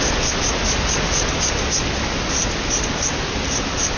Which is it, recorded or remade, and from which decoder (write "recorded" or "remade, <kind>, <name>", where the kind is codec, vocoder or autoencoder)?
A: recorded